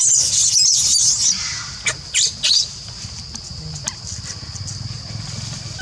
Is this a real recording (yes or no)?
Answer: yes